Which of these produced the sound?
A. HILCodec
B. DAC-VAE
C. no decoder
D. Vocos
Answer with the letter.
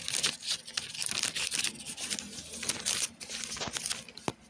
C